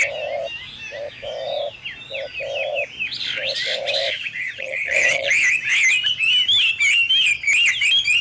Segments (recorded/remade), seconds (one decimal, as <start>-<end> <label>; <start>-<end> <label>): 0.0-4.1 recorded; 4.1-5.3 remade; 5.3-8.2 recorded